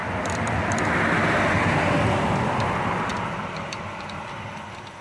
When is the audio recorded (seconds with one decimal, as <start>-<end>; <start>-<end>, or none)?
1.1-3.1